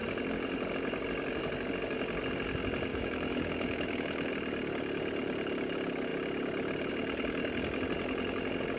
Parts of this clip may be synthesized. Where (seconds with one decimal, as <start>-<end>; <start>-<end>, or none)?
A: 2.9-4.3